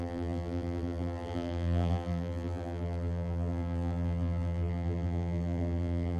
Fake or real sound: fake